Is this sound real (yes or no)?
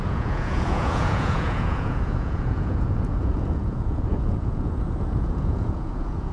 no